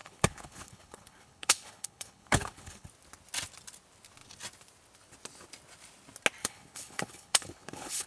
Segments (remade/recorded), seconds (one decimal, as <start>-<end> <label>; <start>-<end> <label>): 0.0-2.9 remade; 2.9-6.4 recorded; 6.4-8.1 remade